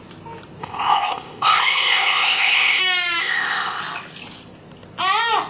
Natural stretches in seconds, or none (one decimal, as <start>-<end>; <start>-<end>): 0.0-0.6; 2.8-3.2; 3.8-5.5